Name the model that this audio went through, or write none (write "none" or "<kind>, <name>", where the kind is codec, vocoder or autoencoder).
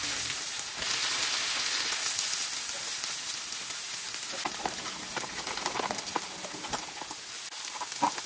none